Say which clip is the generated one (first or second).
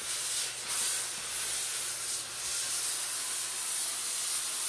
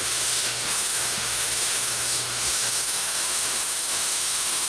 second